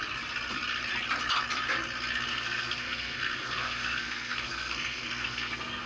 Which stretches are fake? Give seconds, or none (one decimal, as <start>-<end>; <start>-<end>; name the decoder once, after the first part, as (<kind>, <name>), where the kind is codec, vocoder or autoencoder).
2.3-5.9 (codec, SNAC)